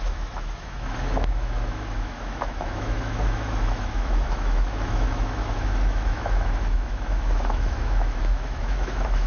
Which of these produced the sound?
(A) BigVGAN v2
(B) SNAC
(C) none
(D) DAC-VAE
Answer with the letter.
D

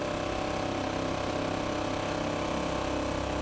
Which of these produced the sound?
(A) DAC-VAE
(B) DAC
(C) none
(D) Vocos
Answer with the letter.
C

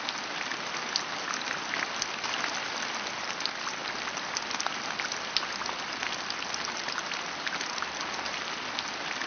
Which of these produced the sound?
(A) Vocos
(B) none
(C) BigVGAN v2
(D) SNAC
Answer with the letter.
B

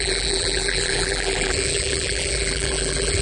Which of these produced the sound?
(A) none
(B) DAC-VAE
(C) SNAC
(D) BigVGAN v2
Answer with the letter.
D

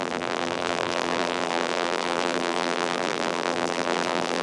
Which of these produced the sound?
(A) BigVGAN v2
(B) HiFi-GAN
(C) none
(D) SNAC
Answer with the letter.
A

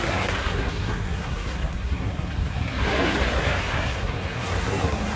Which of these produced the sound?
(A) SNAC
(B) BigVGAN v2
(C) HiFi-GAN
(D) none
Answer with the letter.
A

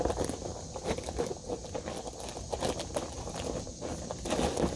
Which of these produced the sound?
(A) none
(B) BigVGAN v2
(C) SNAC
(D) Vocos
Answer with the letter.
A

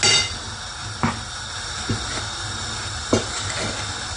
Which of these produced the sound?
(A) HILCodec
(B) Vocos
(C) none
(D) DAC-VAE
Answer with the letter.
C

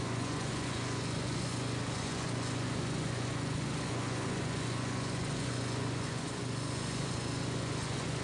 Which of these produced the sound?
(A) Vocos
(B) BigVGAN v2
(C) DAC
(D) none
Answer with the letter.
A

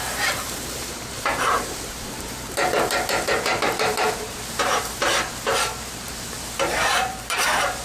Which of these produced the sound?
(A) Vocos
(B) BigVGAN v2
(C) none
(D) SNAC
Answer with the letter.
B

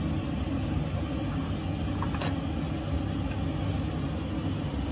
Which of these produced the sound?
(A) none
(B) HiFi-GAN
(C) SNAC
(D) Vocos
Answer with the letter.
A